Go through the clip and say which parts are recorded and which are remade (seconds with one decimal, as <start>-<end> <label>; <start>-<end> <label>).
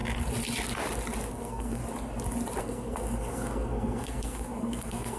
0.0-1.3 recorded; 1.3-1.8 remade; 1.8-2.6 recorded; 2.6-5.2 remade